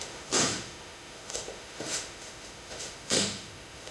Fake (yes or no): yes